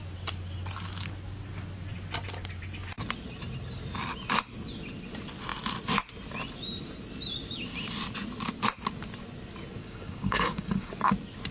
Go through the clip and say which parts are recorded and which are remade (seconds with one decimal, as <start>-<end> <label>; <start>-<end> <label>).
0.0-9.8 recorded; 9.8-10.9 remade; 10.9-11.5 recorded